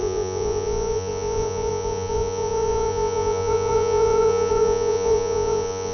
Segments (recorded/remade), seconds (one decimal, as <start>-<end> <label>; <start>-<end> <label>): 0.0-5.9 remade